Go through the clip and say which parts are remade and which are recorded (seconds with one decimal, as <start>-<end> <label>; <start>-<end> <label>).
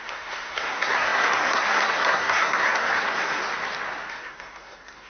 0.0-3.4 remade; 3.4-4.1 recorded; 4.1-5.1 remade